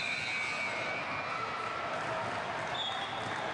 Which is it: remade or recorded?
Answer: recorded